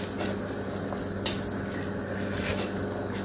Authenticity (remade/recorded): recorded